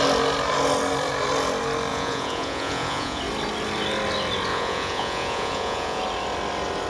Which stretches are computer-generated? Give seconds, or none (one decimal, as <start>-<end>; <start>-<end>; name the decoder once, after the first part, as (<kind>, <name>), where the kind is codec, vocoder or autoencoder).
1.9-3.2 (vocoder, Vocos); 4.5-6.0